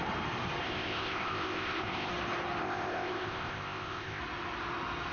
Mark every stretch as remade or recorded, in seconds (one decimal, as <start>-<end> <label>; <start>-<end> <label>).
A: 0.0-0.6 recorded; 0.6-2.1 remade; 2.1-2.6 recorded; 2.6-4.2 remade; 4.2-5.1 recorded